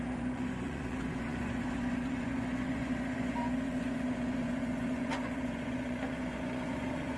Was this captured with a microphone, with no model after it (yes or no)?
no